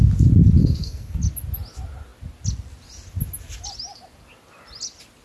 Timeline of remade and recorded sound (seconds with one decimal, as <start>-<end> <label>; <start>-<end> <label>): 0.0-0.6 recorded; 0.6-1.2 remade; 1.2-5.2 recorded